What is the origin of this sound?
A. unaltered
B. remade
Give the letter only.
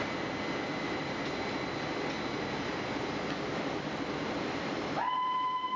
A